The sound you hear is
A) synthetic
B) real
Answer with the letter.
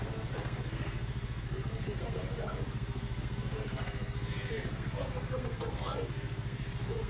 A